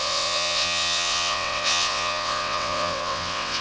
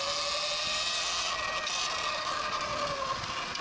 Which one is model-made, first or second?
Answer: first